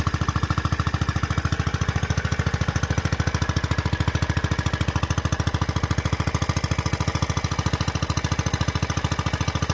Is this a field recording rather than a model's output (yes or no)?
yes